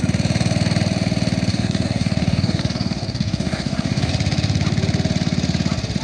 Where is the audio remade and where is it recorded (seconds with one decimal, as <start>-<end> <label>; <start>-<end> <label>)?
0.0-1.5 recorded; 1.5-4.1 remade; 4.1-6.0 recorded